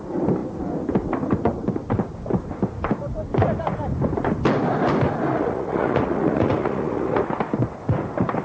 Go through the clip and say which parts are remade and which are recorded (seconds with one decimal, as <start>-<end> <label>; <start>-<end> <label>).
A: 0.0-5.3 recorded; 5.3-7.2 remade; 7.2-8.4 recorded